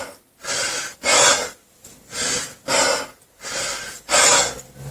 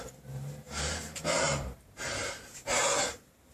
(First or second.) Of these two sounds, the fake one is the second